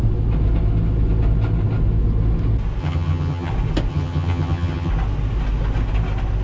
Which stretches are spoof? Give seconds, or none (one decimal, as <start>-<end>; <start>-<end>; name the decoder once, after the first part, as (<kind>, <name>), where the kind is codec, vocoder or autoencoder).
2.8-3.5 (vocoder, HiFi-GAN); 3.9-4.9